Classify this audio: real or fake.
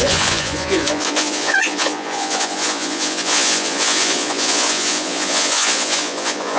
fake